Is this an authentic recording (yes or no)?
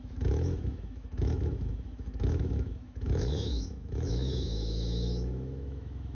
no